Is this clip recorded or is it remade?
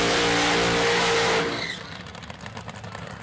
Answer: recorded